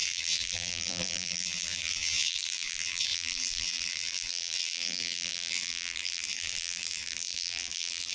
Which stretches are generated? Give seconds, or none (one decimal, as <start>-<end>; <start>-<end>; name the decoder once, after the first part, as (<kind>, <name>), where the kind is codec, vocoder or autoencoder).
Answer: 0.0-8.1 (vocoder, BigVGAN v2)